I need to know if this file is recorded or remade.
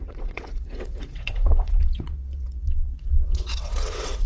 remade